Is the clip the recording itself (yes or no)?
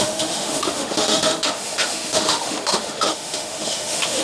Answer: no